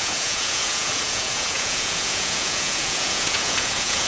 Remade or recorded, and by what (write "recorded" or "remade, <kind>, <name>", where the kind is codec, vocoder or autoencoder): remade, vocoder, Vocos